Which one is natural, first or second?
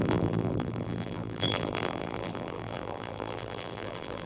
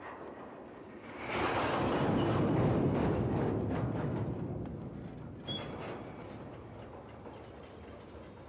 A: second